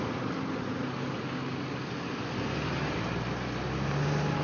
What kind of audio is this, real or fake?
real